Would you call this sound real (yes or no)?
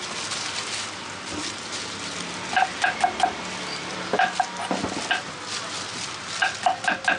yes